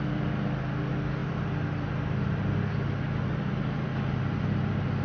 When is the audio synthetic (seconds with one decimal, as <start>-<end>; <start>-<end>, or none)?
none